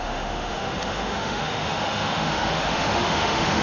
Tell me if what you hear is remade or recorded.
remade